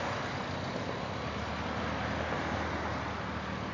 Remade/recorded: recorded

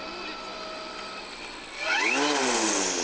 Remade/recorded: recorded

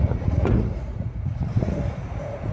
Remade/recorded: remade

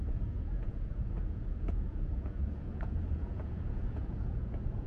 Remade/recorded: remade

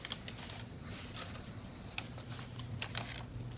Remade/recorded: recorded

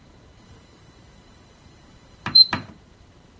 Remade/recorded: remade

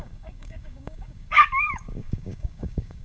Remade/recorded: remade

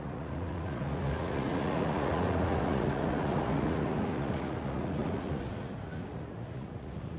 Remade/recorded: remade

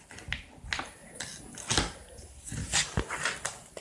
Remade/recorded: recorded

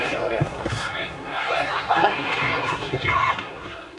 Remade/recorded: remade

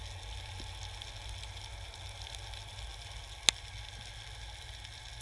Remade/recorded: recorded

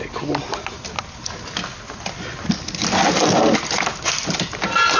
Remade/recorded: recorded